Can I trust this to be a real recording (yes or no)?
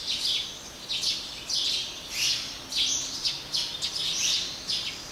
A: yes